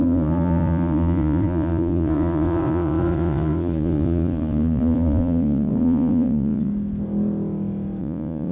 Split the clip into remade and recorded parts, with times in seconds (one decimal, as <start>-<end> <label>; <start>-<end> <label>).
0.0-6.7 remade; 6.7-8.0 recorded; 8.0-8.5 remade